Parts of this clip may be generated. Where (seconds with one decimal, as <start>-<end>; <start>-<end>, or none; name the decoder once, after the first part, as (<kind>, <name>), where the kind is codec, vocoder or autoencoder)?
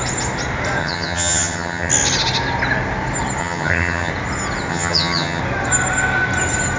0.8-1.9 (vocoder, HiFi-GAN); 3.4-4.1; 4.7-5.4